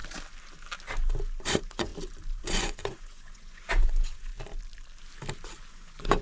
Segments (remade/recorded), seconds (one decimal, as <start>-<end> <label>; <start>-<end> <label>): 0.0-1.4 recorded; 1.4-1.9 remade; 1.9-2.4 recorded; 2.4-4.3 remade; 4.3-5.7 recorded; 5.7-6.2 remade